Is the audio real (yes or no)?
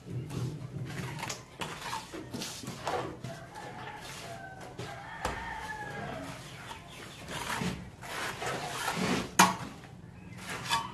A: yes